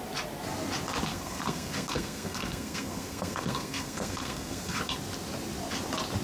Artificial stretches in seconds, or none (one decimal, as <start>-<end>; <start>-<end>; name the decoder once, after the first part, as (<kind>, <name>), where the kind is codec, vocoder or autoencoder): 1.1-4.8 (codec, SNAC)